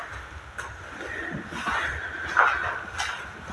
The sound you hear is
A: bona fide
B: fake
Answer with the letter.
A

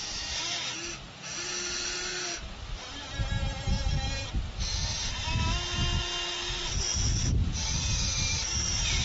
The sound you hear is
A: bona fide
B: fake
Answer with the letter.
A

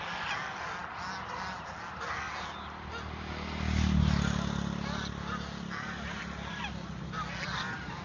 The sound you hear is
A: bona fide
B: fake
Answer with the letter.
A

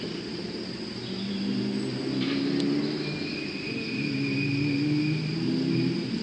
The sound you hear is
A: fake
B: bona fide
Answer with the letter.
B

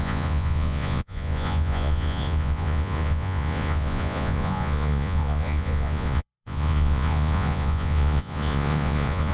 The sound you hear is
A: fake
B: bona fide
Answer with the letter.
A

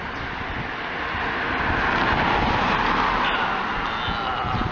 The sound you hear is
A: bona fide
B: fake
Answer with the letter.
A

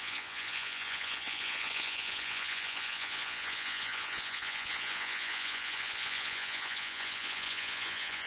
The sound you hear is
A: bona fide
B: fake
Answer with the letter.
B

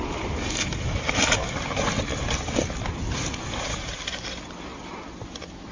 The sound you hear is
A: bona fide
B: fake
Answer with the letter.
A